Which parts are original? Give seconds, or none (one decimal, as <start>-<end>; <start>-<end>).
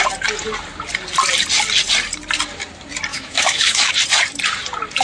0.0-3.1; 3.9-5.0